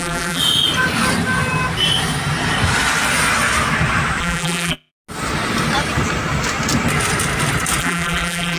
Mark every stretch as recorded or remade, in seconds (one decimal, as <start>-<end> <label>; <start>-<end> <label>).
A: 0.0-0.4 remade; 0.4-4.2 recorded; 4.2-4.9 remade; 4.9-7.8 recorded; 7.8-8.6 remade